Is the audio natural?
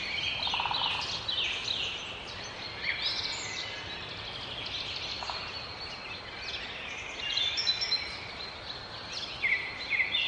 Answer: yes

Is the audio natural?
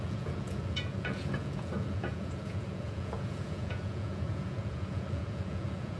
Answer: no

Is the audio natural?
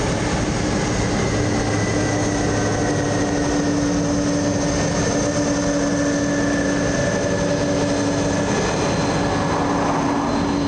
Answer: yes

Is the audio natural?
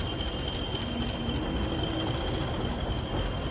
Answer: yes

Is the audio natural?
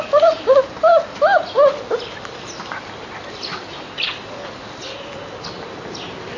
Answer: yes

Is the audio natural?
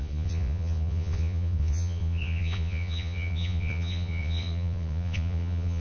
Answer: no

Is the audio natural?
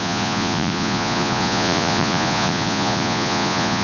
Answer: no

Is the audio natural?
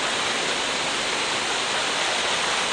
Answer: yes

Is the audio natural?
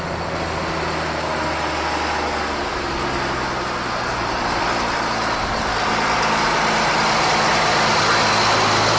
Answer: yes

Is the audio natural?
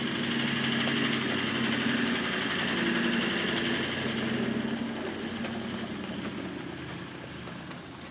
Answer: yes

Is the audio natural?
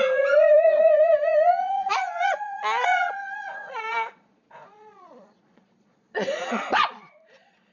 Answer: no